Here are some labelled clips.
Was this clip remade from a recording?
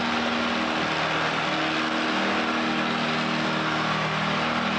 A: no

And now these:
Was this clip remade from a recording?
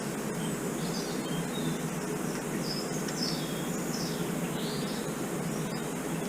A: no